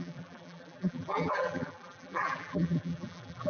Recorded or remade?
remade